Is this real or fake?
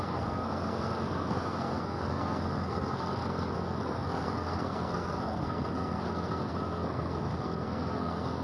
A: fake